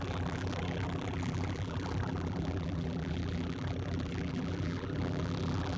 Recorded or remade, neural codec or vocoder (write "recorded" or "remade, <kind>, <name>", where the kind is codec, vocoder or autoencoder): remade, vocoder, BigVGAN v2